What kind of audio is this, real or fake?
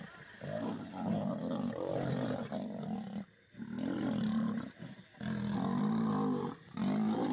real